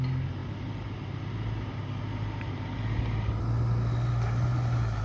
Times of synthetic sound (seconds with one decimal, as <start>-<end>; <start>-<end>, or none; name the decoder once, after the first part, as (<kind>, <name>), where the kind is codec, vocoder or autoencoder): none